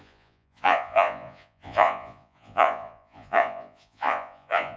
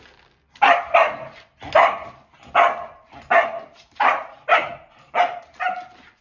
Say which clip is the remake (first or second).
first